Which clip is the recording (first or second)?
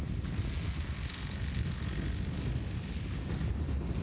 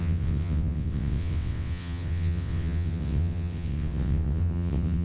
first